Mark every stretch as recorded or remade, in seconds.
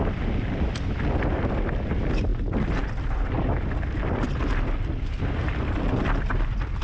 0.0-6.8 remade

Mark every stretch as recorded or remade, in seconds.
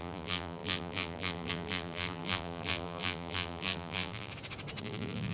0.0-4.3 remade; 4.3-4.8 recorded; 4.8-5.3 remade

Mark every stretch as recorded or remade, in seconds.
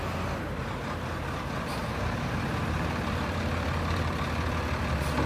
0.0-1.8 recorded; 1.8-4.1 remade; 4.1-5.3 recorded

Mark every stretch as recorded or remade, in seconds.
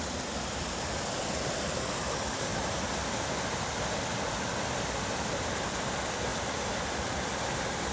0.0-2.5 remade; 2.5-4.0 recorded; 4.0-7.9 remade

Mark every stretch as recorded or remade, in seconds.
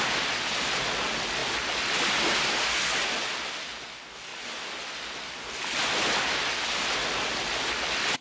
0.0-8.2 recorded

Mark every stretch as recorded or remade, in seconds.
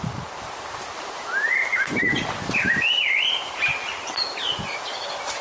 0.0-3.7 remade; 3.7-4.8 recorded; 4.8-5.4 remade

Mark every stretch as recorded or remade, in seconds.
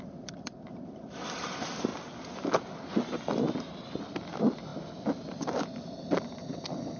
0.0-1.9 remade; 1.9-4.0 recorded; 4.0-4.7 remade; 4.7-6.0 recorded; 6.0-7.0 remade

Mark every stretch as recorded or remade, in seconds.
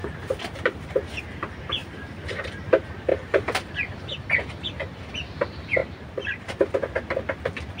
0.0-1.2 remade; 1.2-1.8 recorded; 1.8-2.5 remade; 2.5-3.1 recorded; 3.1-3.7 remade; 3.7-5.8 recorded; 5.8-6.5 remade; 6.5-7.8 recorded